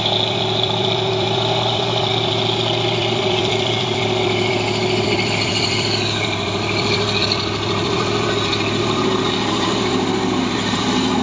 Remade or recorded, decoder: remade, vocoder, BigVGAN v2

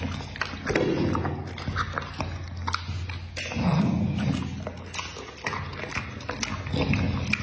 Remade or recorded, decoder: recorded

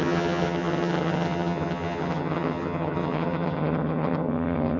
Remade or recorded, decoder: remade, vocoder, HiFi-GAN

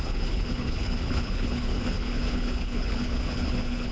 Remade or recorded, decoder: remade, codec, HILCodec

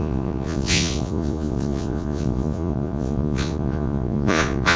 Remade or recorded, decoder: remade, vocoder, Vocos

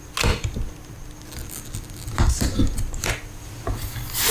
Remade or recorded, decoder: recorded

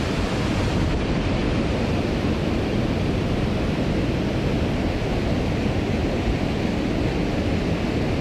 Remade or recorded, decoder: remade, vocoder, BigVGAN v2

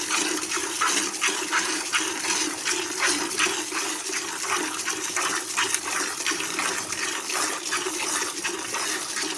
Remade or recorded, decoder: recorded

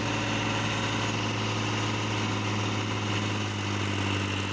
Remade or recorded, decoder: recorded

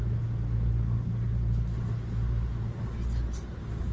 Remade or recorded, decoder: recorded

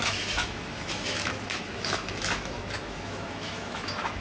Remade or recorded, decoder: remade, autoencoder, DAC-VAE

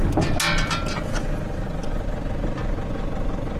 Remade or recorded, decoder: recorded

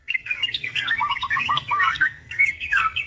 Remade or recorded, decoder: remade, codec, SNAC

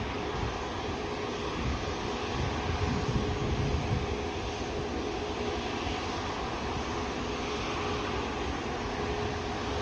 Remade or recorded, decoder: recorded